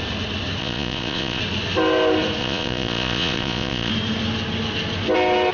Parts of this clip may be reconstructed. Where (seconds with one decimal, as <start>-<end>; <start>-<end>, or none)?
0.6-1.4; 2.4-3.9